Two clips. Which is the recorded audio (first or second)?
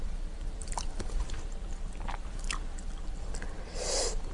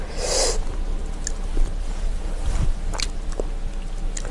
second